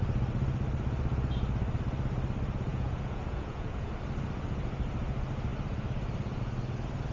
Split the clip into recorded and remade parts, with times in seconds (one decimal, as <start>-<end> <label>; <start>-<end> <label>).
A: 0.0-2.7 recorded; 2.7-3.9 remade; 3.9-7.1 recorded